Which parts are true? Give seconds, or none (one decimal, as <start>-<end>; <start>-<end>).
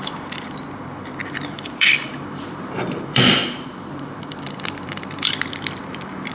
none